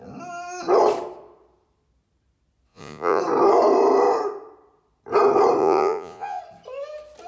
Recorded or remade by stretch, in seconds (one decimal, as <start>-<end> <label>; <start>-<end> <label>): 0.0-2.7 recorded; 2.7-3.2 remade; 3.2-5.6 recorded; 5.6-6.4 remade; 6.4-7.3 recorded